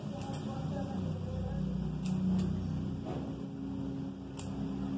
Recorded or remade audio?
recorded